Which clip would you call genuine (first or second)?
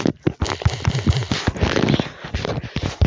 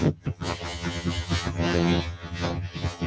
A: first